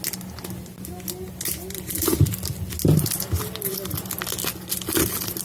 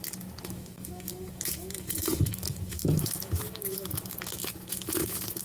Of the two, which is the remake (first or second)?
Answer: second